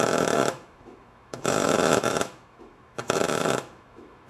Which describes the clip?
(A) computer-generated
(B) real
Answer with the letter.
A